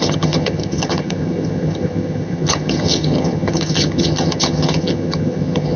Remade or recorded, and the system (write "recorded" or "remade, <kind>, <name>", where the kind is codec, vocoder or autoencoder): remade, vocoder, HiFi-GAN